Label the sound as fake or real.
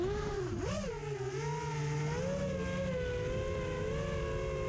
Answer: real